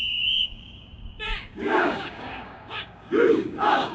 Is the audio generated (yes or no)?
yes